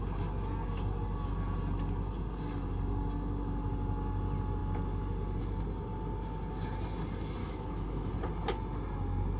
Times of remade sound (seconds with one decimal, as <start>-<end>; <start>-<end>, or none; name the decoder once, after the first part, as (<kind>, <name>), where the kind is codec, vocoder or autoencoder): 7.4-8.1 (autoencoder, DAC-VAE)